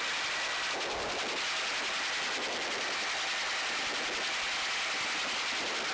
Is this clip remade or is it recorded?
recorded